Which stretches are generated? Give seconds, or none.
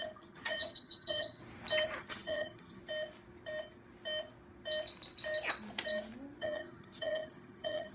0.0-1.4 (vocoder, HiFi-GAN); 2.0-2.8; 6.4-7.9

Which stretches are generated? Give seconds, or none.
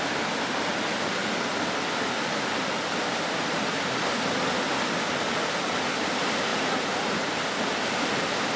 none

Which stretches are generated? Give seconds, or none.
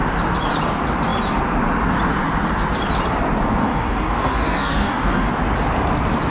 3.6-5.3 (codec, DAC)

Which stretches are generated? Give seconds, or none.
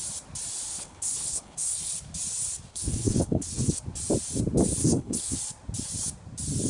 0.7-1.9 (codec, HILCodec); 2.7-3.8; 4.8-5.4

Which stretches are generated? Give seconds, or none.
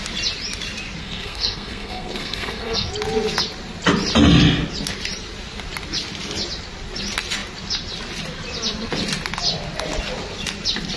1.0-2.9 (codec, SNAC)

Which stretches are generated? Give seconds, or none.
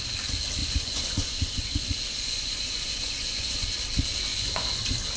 0.6-3.7 (vocoder, Vocos); 4.3-4.8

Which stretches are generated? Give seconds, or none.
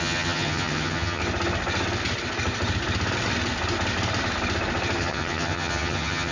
0.0-1.2 (vocoder, HiFi-GAN); 5.0-6.3